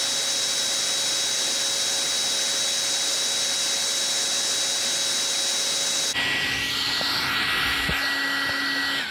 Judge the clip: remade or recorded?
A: recorded